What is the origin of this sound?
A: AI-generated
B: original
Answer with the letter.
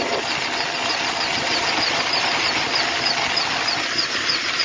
B